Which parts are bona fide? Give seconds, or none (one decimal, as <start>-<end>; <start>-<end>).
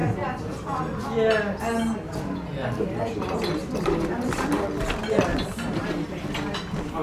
0.0-5.3; 6.1-7.0